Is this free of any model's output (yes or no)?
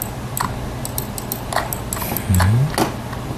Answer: yes